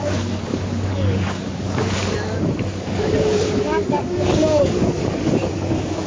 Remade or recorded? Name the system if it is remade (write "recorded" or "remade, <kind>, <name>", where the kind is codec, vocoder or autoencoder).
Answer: remade, codec, DAC